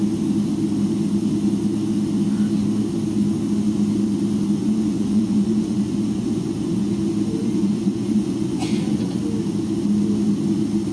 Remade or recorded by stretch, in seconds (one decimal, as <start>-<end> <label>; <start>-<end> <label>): 0.0-4.6 recorded; 4.6-7.0 remade; 7.0-7.4 recorded; 7.4-9.2 remade; 9.2-10.9 recorded